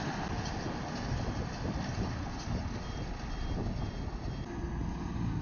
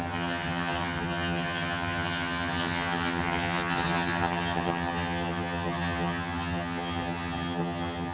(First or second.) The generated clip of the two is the second